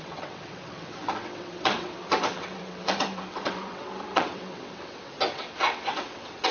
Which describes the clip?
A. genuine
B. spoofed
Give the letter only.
B